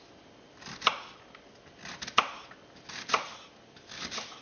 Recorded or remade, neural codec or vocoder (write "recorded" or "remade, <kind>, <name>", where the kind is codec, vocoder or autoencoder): recorded